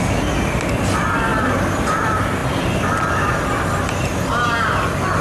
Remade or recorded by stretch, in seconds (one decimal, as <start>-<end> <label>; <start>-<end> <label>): 0.0-5.2 recorded